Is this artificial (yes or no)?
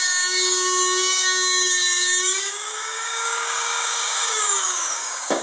yes